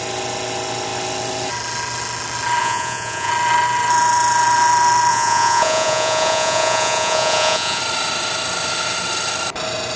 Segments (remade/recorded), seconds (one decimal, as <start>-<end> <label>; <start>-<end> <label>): 0.0-2.6 recorded; 2.6-3.3 remade; 3.3-5.1 recorded; 5.1-7.8 remade; 7.8-10.0 recorded